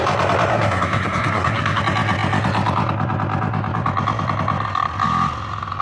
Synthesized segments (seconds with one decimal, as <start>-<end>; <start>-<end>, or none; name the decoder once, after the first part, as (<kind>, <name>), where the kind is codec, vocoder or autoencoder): 0.5-1.8 (codec, SNAC)